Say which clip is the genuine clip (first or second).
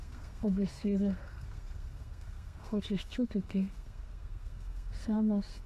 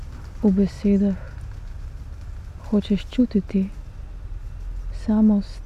second